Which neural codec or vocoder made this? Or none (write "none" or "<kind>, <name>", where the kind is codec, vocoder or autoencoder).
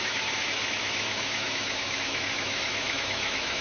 autoencoder, DAC-VAE